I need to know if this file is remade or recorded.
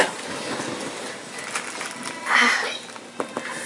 recorded